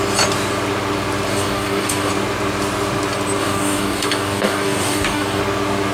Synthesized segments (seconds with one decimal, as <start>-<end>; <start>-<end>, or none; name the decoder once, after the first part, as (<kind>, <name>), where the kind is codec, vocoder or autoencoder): 1.3-2.1 (codec, DAC); 3.4-5.4